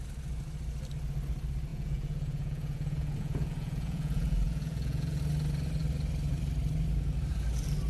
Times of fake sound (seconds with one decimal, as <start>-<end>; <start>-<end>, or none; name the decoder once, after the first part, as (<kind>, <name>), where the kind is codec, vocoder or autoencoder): 1.7-5.2 (vocoder, Vocos)